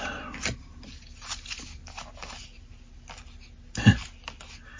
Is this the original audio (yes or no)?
yes